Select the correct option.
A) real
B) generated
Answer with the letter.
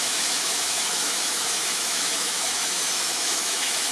B